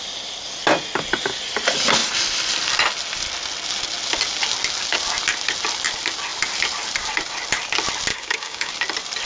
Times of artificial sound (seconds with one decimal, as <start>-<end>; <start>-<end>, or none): 8.1-8.7